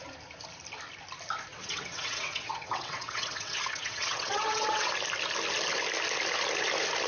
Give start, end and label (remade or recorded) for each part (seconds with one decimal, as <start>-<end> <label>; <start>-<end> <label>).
0.0-1.5 recorded; 1.5-4.9 remade; 4.9-7.1 recorded